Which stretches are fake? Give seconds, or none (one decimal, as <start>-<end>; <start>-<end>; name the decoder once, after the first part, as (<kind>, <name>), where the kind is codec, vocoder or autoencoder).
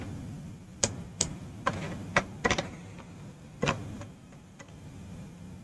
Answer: 0.7-1.4 (vocoder, BigVGAN v2); 2.0-5.6